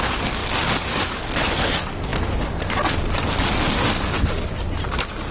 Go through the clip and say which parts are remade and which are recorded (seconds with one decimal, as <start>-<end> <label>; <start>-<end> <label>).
0.0-5.3 recorded